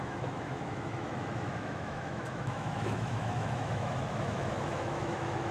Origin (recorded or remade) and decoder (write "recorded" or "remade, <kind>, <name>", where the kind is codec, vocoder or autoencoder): remade, autoencoder, DAC-VAE